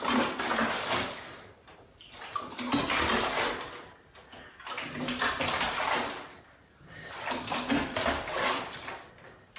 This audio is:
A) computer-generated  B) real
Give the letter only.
B